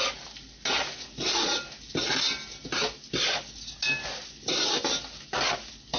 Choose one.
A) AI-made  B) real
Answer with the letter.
B